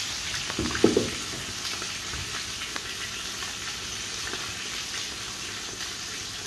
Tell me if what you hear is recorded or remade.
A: recorded